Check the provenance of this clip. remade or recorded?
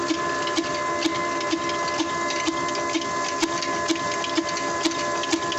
recorded